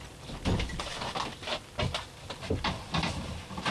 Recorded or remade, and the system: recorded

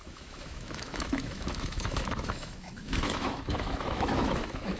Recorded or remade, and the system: remade, autoencoder, DAC-VAE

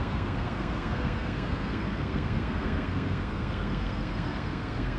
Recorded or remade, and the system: remade, codec, SNAC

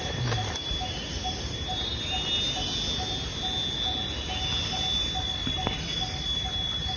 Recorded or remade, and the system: recorded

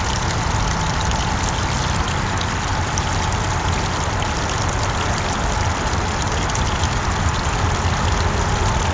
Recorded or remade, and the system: recorded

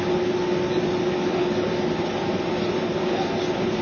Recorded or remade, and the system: recorded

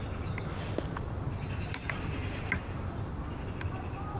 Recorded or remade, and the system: remade, vocoder, BigVGAN v2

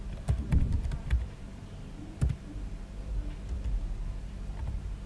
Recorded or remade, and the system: recorded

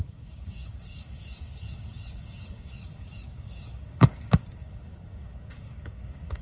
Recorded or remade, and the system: remade, codec, DAC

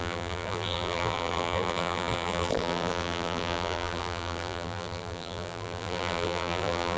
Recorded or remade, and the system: remade, vocoder, BigVGAN v2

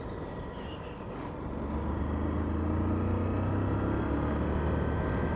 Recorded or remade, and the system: recorded